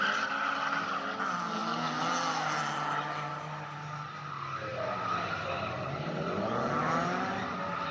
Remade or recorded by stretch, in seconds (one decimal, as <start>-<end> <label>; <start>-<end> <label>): 0.0-7.9 recorded